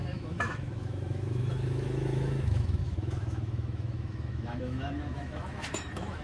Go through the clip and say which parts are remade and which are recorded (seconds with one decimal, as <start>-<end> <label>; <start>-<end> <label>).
0.0-6.2 remade